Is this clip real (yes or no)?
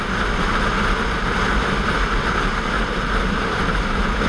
yes